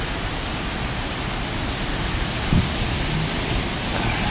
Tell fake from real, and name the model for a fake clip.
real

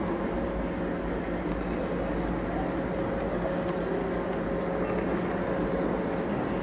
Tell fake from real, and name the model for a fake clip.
real